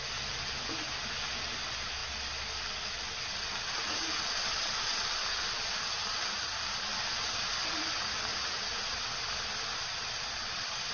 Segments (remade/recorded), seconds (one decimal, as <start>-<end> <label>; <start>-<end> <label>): 0.0-6.0 recorded; 6.0-6.6 remade; 6.6-10.9 recorded